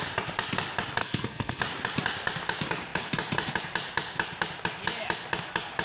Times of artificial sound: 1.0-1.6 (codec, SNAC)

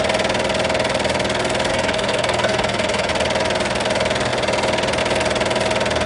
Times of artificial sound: 1.7-3.1 (codec, SNAC)

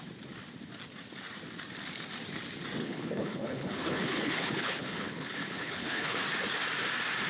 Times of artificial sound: 2.8-6.2 (codec, HILCodec)

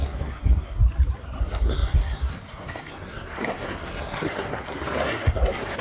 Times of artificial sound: 0.0-0.8 (codec, SNAC); 1.4-5.8

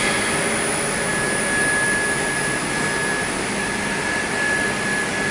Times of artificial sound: none

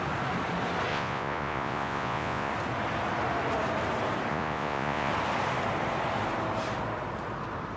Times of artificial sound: 0.9-2.5 (vocoder, Vocos); 4.3-5.1

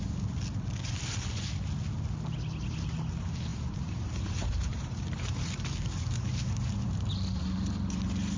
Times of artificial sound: 3.5-7.1 (vocoder, BigVGAN v2)